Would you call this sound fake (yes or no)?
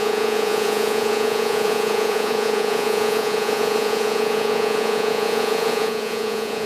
yes